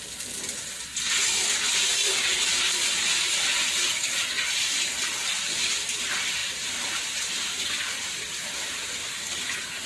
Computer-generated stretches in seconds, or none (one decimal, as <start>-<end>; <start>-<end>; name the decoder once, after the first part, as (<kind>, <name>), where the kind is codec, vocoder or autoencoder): 6.4-8.3 (vocoder, BigVGAN v2)